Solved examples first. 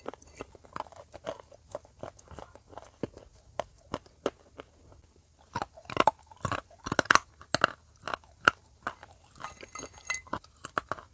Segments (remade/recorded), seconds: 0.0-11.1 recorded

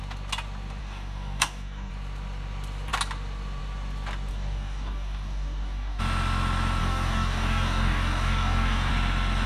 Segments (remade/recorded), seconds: 0.0-0.8 recorded; 0.8-1.9 remade; 1.9-4.3 recorded; 4.3-6.0 remade; 6.0-6.8 recorded; 6.8-8.9 remade; 8.9-9.5 recorded

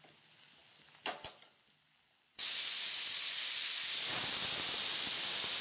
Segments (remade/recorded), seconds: 0.0-5.6 recorded

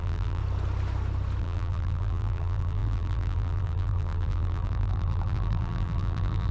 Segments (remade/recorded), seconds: 0.0-0.4 remade; 0.4-1.4 recorded; 1.4-6.5 remade

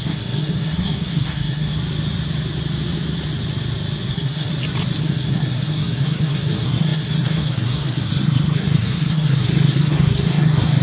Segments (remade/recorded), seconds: 0.0-1.8 remade; 1.8-4.1 recorded; 4.1-4.5 remade; 4.5-5.0 recorded; 5.0-10.8 remade